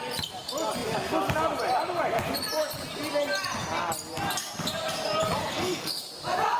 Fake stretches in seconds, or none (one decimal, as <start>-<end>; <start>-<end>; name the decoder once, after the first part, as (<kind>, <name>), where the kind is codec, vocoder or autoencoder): 5.4-6.0 (codec, SNAC)